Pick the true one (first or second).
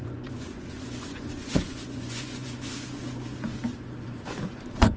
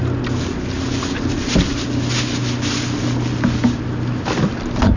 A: second